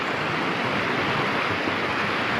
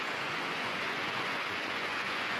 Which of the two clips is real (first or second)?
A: first